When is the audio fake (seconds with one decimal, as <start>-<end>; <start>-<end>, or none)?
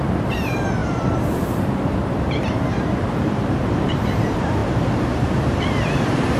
0.0-6.4